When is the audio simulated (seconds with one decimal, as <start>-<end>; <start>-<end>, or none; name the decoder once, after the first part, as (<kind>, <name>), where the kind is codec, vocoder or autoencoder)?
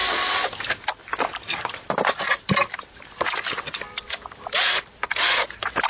none